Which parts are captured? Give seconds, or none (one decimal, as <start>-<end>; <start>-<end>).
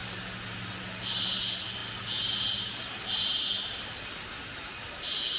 0.0-5.4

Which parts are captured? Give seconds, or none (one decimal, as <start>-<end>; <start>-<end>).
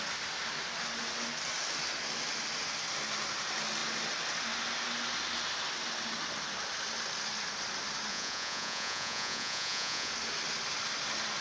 0.0-8.1; 10.1-11.4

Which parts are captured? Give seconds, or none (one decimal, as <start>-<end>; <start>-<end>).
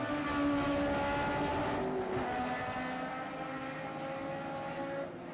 0.0-5.3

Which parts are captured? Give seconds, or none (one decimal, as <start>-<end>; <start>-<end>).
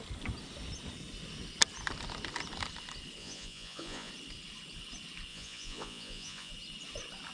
0.0-3.2; 4.1-5.3; 6.5-7.3